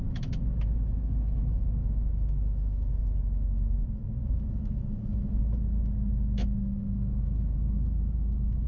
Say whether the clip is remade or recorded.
remade